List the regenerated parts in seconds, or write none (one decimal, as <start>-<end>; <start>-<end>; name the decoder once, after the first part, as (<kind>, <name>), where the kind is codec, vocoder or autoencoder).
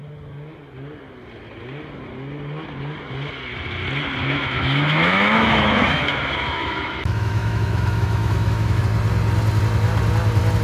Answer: 4.2-8.8 (autoencoder, DAC-VAE)